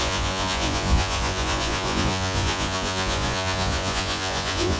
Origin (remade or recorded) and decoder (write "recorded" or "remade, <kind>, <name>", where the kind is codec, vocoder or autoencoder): remade, vocoder, Vocos